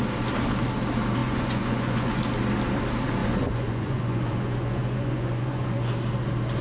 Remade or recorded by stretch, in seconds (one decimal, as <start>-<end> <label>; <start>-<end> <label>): 0.0-1.2 recorded; 1.2-2.2 remade; 2.2-3.2 recorded; 3.2-5.9 remade; 5.9-6.6 recorded